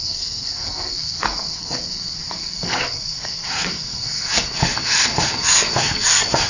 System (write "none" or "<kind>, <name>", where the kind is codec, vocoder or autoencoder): codec, SNAC